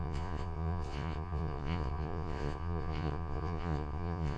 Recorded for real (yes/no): no